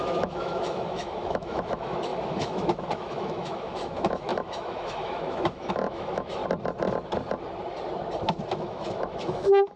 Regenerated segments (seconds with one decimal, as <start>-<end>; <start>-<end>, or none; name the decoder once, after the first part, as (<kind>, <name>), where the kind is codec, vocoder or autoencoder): 0.0-6.4 (autoencoder, DAC-VAE); 8.5-9.8

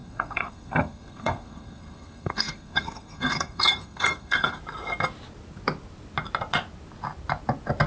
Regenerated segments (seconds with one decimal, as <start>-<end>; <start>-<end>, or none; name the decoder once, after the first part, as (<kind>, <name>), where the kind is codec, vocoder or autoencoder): 0.0-4.6 (codec, SNAC)

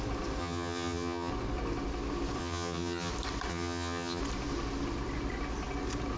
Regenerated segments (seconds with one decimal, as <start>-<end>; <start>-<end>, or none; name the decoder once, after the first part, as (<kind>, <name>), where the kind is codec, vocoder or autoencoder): 0.4-1.3 (vocoder, HiFi-GAN); 2.4-3.1; 3.5-4.2